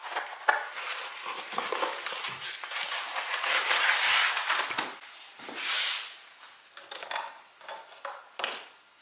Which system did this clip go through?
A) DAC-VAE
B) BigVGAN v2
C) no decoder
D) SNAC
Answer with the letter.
C